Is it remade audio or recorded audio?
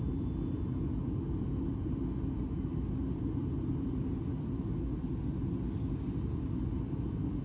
recorded